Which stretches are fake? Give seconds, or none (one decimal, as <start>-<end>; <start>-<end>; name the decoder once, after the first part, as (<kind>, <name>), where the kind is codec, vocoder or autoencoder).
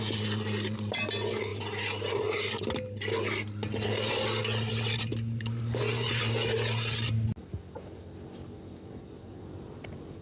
none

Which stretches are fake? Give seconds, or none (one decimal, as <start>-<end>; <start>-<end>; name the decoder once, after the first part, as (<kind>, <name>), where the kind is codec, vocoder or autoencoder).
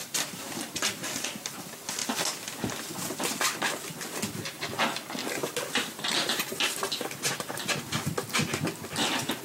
0.0-0.7 (vocoder, BigVGAN v2); 5.4-7.7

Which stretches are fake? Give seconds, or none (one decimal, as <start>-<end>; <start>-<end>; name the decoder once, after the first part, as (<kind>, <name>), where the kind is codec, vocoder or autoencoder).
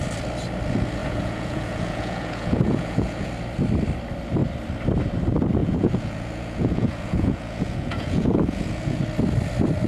1.0-3.3 (vocoder, Vocos); 5.6-9.0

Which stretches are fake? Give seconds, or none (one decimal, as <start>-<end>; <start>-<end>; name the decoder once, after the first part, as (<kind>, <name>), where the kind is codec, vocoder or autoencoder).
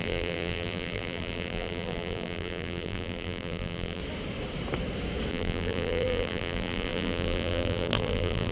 0.0-4.0 (vocoder, BigVGAN v2); 5.3-8.5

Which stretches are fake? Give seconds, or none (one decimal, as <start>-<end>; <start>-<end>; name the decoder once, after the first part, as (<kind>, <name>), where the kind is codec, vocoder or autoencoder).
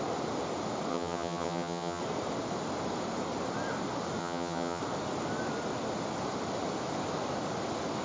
0.9-2.0 (vocoder, HiFi-GAN); 4.2-4.8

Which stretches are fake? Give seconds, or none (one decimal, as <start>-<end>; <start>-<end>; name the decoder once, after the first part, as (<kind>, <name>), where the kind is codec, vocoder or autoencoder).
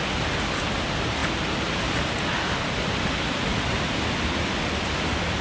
none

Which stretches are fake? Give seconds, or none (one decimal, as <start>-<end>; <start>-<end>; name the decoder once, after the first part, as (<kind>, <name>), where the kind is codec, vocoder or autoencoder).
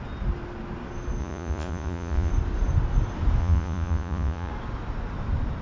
1.2-2.3 (vocoder, Vocos); 3.4-4.5